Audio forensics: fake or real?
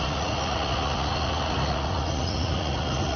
fake